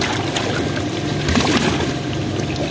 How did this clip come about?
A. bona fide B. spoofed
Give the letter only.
A